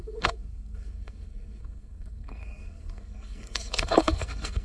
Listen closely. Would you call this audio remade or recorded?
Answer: remade